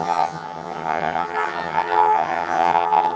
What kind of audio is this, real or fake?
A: fake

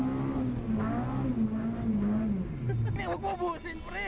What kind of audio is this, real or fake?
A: real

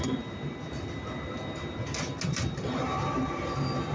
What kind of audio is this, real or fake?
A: real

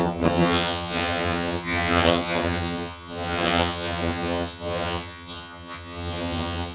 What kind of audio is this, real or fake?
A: fake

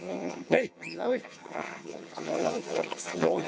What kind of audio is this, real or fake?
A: fake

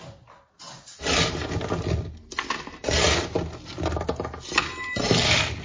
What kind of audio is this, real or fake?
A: real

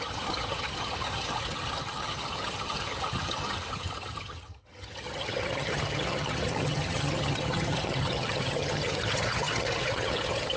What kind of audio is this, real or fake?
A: fake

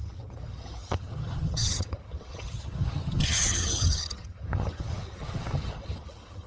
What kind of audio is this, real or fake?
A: fake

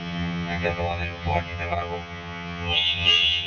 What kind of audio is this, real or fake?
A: fake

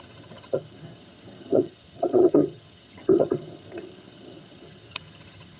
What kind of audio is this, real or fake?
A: fake